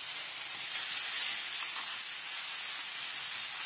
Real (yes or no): yes